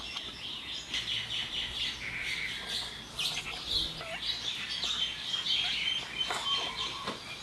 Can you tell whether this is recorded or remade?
recorded